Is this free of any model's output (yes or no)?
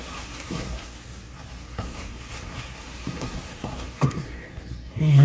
no